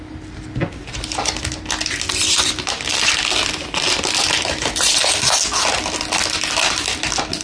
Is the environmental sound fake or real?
real